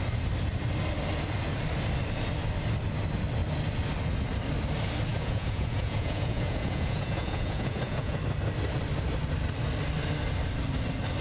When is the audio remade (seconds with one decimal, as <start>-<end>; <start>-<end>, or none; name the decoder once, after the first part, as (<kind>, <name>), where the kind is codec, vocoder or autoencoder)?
5.1-8.2 (vocoder, Vocos)